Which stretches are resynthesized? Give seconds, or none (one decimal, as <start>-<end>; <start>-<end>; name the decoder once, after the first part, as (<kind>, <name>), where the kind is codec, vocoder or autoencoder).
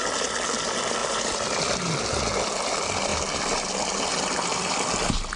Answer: 1.0-1.6 (vocoder, BigVGAN v2)